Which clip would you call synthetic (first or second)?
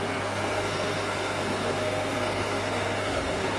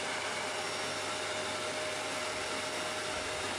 first